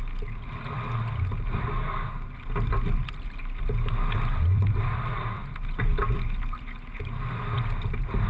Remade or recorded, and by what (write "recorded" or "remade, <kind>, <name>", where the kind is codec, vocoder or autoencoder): recorded